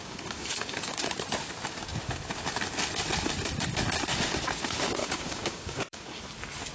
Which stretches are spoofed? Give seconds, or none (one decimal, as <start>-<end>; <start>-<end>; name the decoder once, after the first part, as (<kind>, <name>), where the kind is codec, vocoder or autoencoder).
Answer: 0.0-1.1 (codec, DAC); 5.0-6.2